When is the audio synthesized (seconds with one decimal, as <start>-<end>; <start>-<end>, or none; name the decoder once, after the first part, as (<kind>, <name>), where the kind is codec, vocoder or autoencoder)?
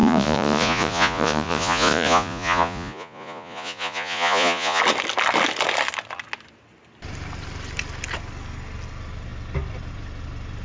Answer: 0.0-4.8 (vocoder, Vocos)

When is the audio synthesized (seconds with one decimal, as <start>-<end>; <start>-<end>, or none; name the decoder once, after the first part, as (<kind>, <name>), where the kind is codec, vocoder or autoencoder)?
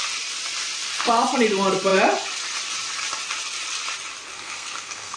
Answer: 4.3-5.2 (codec, SNAC)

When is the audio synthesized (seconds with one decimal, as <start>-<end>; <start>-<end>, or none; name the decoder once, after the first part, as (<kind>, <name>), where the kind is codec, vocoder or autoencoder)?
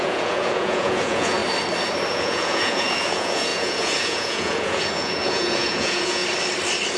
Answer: 0.0-1.4 (vocoder, Vocos); 2.1-6.2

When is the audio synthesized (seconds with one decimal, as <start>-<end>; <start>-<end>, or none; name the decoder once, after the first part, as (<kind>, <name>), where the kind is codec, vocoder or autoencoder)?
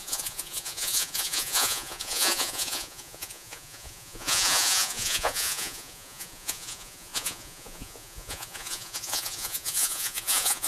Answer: 0.0-10.7 (vocoder, Vocos)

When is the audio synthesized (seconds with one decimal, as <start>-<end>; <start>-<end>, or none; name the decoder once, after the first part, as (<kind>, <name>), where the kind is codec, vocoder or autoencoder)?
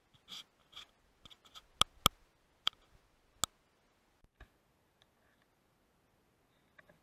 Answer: none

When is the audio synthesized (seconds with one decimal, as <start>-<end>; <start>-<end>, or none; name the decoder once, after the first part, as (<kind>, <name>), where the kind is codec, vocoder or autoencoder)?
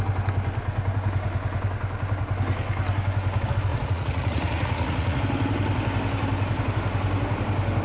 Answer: 3.7-5.2 (vocoder, Vocos)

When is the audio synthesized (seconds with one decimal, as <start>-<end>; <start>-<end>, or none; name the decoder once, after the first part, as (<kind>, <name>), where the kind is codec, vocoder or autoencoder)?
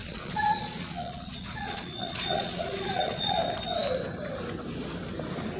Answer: 0.0-3.4 (vocoder, Vocos)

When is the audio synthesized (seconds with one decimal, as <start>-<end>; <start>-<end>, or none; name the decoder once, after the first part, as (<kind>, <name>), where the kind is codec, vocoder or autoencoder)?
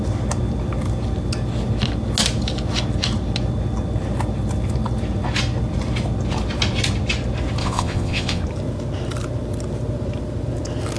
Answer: 7.6-8.4 (vocoder, Vocos)